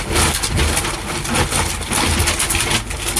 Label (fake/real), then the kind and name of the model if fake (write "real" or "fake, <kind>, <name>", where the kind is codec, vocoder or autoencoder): real